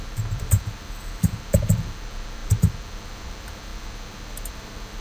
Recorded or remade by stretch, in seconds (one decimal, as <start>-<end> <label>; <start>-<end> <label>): 0.0-5.0 remade